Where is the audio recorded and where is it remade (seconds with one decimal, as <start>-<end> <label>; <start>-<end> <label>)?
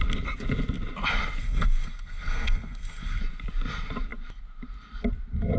0.0-1.4 recorded; 1.4-3.2 remade; 3.2-5.6 recorded